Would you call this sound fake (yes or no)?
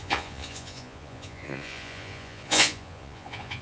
yes